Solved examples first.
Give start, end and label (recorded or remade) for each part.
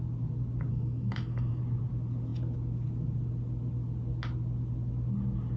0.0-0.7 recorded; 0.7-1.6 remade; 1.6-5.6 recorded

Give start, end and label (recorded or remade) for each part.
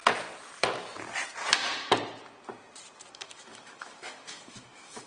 0.0-3.1 recorded; 3.1-5.1 remade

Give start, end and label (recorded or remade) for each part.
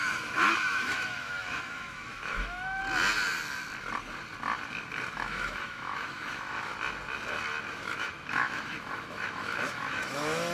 0.0-2.8 remade; 2.8-5.1 recorded; 5.1-6.7 remade; 6.7-7.7 recorded; 7.7-10.5 remade